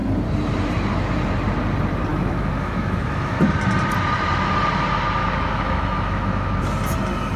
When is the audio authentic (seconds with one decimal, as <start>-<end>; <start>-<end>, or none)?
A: 0.0-2.1; 3.4-5.2; 6.6-7.4